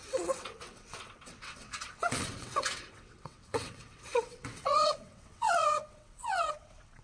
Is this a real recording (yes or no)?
no